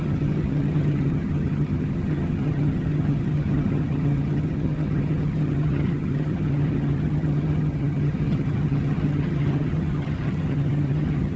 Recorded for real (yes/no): no